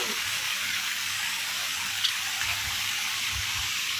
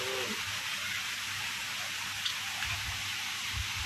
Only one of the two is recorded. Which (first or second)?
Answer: second